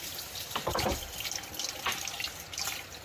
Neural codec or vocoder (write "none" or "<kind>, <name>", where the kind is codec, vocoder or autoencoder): none